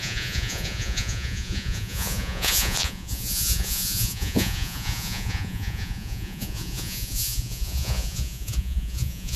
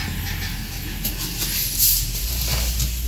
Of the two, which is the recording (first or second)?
second